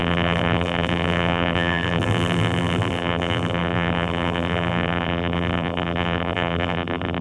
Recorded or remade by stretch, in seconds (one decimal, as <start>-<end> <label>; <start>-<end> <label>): 0.0-7.2 remade